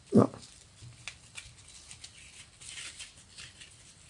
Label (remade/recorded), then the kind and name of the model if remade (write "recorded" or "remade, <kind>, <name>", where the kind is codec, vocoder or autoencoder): recorded